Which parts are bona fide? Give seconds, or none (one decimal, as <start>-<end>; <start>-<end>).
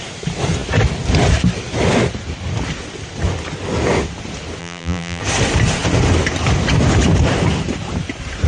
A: 0.0-4.6; 5.2-8.5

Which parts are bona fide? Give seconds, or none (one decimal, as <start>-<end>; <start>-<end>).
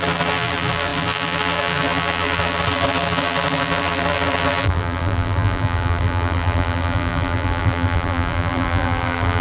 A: none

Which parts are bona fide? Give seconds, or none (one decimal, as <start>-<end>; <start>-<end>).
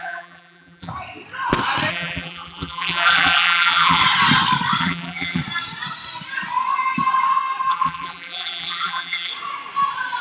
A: 0.9-1.9; 4.0-4.8; 5.4-7.7; 9.3-10.2